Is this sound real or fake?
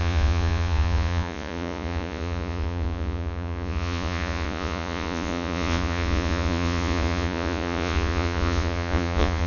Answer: fake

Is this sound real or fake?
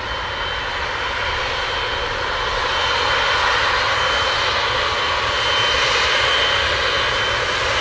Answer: real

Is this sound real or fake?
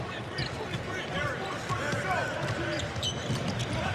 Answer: real